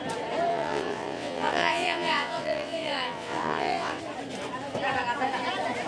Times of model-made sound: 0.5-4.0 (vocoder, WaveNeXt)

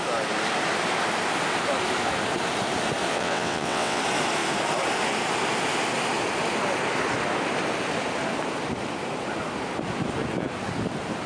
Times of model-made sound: 3.1-4.0 (vocoder, WaveNeXt)

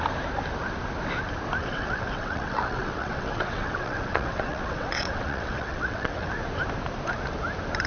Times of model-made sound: 1.6-6.3 (vocoder, WaveNeXt)

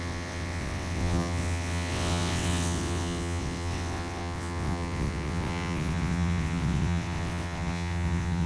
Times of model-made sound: 0.0-8.5 (vocoder, WaveNeXt)